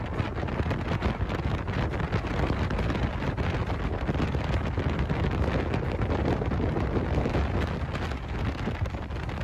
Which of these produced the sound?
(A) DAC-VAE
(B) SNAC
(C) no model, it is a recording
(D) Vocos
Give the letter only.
C